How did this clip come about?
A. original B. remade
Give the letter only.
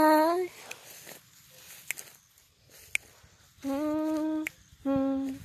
A